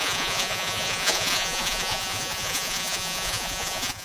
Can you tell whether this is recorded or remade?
remade